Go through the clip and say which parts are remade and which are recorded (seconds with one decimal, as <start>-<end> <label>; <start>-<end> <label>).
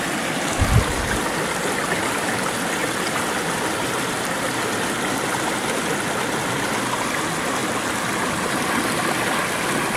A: 0.0-2.8 recorded; 2.8-4.3 remade; 4.3-7.6 recorded; 7.6-10.0 remade